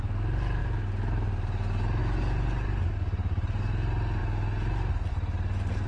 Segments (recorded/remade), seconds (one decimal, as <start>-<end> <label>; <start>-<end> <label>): 0.0-5.9 recorded